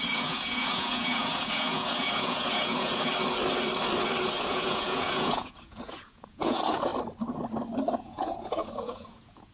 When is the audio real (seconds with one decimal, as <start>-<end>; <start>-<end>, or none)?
3.1-4.5; 6.9-7.9